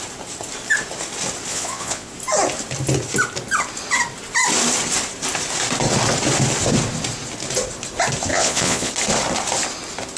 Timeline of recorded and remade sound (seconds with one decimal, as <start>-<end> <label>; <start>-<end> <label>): 0.0-1.5 recorded; 1.5-2.1 remade; 2.1-8.3 recorded; 8.3-8.9 remade; 8.9-10.2 recorded